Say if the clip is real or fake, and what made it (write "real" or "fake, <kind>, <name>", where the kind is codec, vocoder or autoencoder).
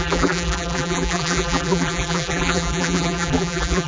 fake, vocoder, BigVGAN v2